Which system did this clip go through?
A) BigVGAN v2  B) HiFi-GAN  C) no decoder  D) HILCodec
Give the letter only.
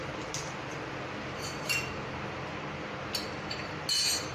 C